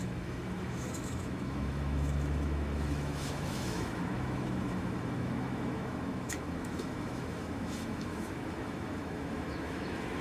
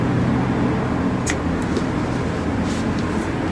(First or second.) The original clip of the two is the second